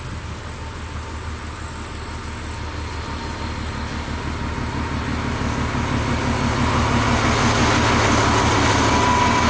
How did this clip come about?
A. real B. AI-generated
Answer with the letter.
A